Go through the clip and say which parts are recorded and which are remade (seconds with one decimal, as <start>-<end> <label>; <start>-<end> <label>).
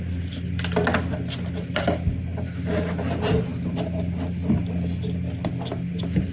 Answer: 0.0-6.3 recorded